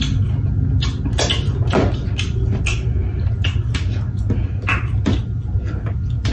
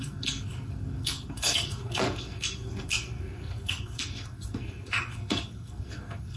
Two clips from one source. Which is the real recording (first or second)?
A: first